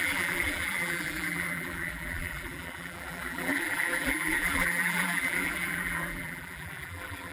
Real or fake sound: fake